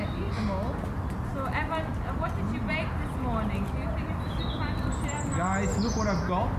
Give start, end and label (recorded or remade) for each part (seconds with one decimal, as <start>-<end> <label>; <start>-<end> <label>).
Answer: 0.0-6.6 recorded